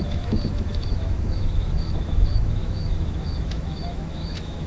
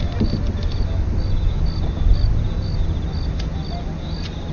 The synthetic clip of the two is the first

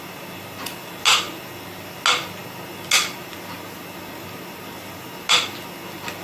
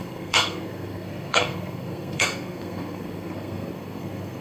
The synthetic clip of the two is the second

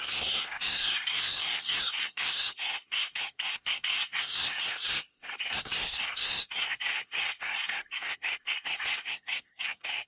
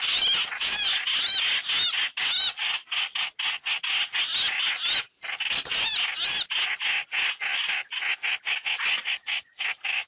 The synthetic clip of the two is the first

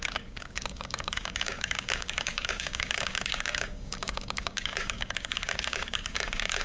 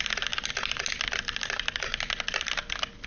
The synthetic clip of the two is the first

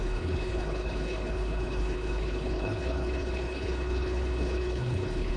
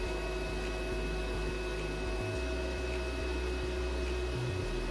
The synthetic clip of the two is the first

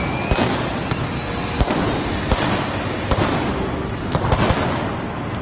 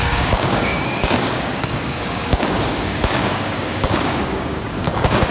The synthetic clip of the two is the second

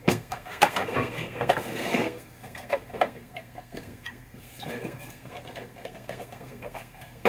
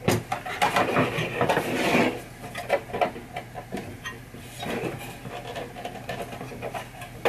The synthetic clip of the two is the first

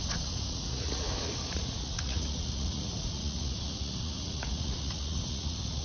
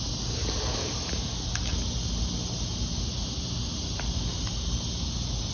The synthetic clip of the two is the first